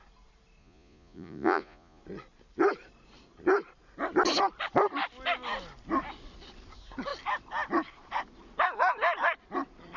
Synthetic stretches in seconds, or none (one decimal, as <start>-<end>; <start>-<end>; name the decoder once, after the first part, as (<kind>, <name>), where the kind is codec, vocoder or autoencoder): 0.6-2.0 (vocoder, Vocos)